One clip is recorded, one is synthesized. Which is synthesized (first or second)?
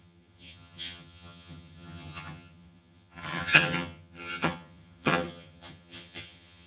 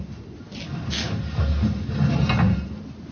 first